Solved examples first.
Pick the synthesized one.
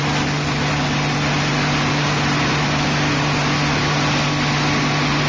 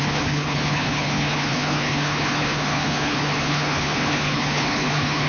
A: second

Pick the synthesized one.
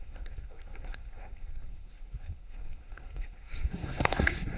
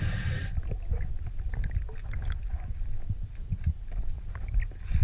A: first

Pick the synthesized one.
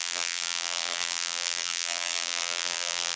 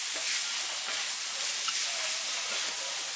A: first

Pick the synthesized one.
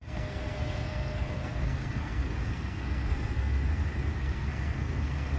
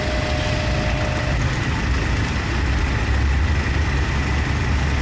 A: first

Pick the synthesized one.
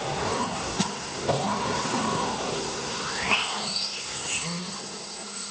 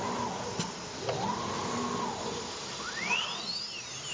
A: first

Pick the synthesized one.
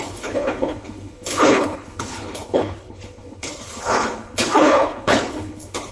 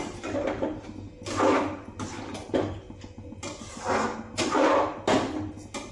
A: first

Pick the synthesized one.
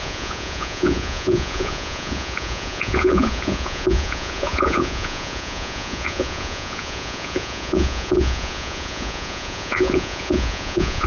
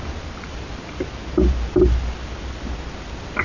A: first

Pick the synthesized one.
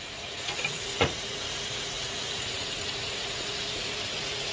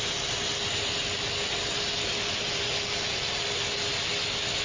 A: first